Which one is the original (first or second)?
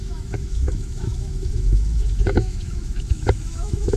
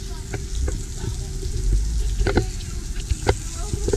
second